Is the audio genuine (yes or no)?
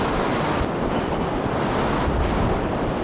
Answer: yes